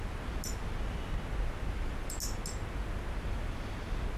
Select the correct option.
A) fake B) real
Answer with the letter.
B